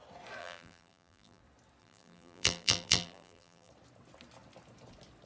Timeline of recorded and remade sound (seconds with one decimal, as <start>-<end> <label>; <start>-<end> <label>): 0.0-0.4 recorded; 0.4-1.4 remade; 1.4-1.8 recorded; 1.8-3.7 remade; 3.7-5.3 recorded